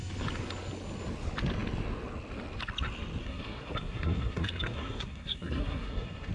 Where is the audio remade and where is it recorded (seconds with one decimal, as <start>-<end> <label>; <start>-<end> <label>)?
0.0-3.2 recorded; 3.2-6.3 remade